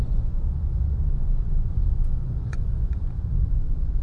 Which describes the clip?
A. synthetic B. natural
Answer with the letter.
A